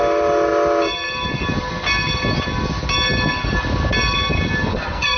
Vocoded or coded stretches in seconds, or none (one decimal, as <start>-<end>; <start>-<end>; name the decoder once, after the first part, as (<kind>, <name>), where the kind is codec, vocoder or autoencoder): 4.7-5.2 (codec, SNAC)